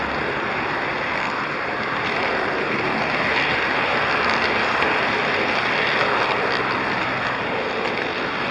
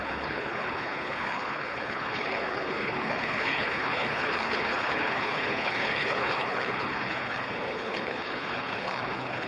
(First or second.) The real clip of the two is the first